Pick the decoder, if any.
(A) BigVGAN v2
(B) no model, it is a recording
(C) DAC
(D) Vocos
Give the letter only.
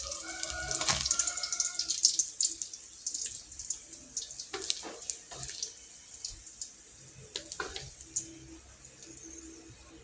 B